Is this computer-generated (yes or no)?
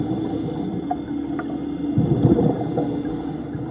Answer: no